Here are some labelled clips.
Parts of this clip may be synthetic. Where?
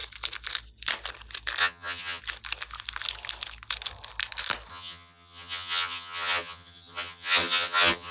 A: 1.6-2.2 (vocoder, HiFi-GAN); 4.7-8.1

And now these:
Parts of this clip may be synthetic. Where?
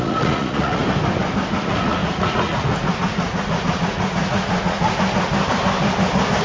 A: 0.0-0.8 (vocoder, Vocos); 1.6-5.3